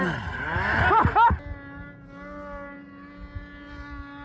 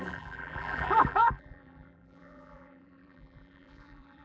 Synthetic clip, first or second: second